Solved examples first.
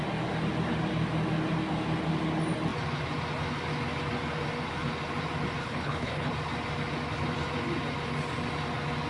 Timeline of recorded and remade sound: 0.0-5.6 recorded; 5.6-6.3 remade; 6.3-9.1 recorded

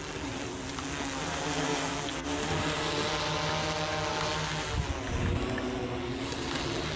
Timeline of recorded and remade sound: 0.0-7.0 recorded

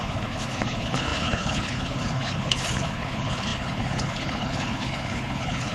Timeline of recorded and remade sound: 0.0-5.7 remade

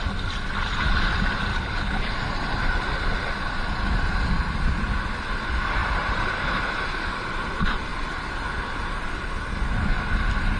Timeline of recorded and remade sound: 0.0-1.5 recorded; 1.5-2.1 remade; 2.1-10.6 recorded

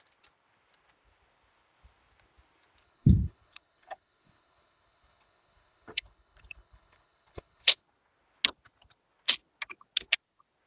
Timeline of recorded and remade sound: 0.0-2.8 recorded; 2.8-7.8 remade; 7.8-10.7 recorded